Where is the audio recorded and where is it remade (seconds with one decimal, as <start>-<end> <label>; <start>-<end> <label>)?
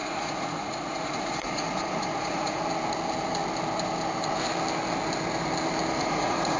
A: 0.0-2.6 remade; 2.6-6.0 recorded; 6.0-6.6 remade